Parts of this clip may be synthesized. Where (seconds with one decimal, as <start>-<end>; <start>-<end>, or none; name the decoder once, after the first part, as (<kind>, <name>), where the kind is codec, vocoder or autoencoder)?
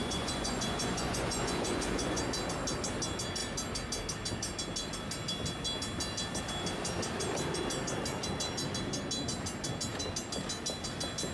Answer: 0.0-2.2 (vocoder, Vocos)